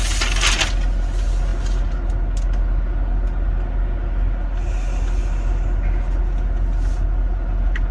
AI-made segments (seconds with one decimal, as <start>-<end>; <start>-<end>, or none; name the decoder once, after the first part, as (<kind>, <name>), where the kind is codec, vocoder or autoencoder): none